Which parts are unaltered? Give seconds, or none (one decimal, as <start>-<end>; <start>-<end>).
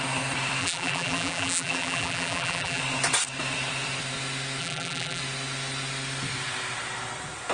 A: 0.0-0.6; 2.8-4.6; 5.2-7.5